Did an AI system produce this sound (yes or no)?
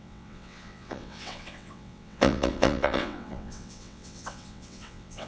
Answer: yes